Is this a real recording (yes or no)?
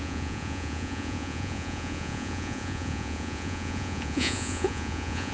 no